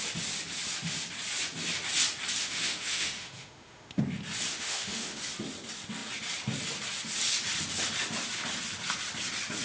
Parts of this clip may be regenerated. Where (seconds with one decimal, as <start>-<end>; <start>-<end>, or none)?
2.4-4.0; 4.5-5.2